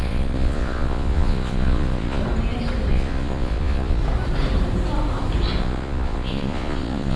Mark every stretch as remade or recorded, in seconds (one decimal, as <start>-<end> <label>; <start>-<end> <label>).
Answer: 0.0-2.2 remade; 2.2-2.9 recorded; 2.9-4.0 remade; 4.0-5.6 recorded; 5.6-7.2 remade